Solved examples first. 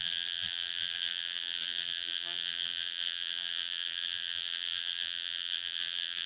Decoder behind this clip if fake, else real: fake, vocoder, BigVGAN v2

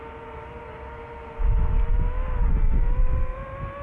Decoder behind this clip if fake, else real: real